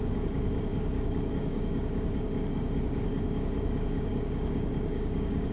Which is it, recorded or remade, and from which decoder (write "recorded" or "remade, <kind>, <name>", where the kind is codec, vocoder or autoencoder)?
remade, codec, DAC